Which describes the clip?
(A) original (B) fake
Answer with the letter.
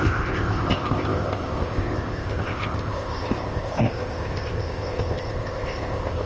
B